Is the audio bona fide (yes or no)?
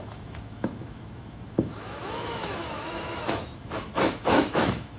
no